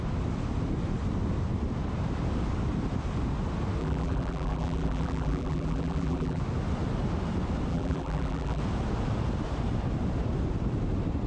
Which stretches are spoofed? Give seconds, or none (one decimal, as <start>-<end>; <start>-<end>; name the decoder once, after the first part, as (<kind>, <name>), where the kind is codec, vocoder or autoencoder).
3.8-6.4 (vocoder, BigVGAN v2); 7.7-8.6